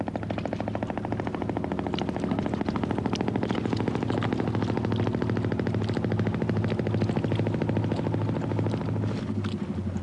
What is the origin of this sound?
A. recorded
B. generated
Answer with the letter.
A